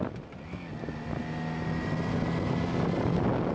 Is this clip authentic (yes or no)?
yes